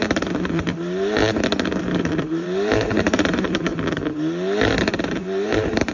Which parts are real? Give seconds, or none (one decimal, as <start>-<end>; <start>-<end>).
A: 1.2-1.8; 3.7-4.9